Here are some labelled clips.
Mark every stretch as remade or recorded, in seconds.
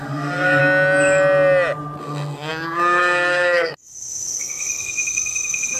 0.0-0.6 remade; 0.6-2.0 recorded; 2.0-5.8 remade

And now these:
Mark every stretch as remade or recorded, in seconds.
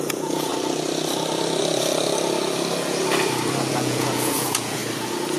0.0-0.5 remade; 0.5-3.7 recorded; 3.7-4.8 remade; 4.8-5.4 recorded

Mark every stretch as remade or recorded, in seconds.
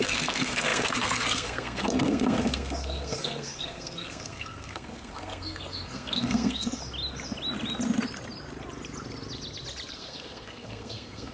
0.0-6.8 remade; 6.8-9.9 recorded; 9.9-11.3 remade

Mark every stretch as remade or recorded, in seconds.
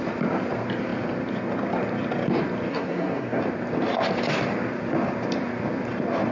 0.0-2.7 recorded; 2.7-3.4 remade; 3.4-6.3 recorded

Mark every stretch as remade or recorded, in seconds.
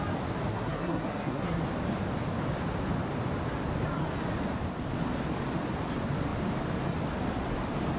0.0-0.5 recorded; 0.5-1.6 remade; 1.6-8.0 recorded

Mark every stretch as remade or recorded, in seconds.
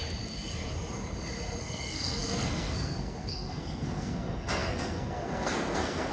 0.0-1.6 recorded; 1.6-6.1 remade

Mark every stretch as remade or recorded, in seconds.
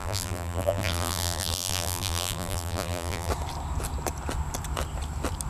0.0-3.3 remade; 3.3-5.5 recorded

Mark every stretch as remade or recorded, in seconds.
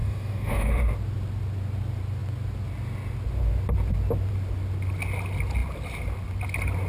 0.0-0.7 remade; 0.7-6.9 recorded